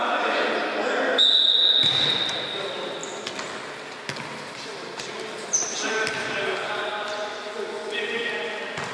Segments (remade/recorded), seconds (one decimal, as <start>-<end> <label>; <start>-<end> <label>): 0.0-8.9 recorded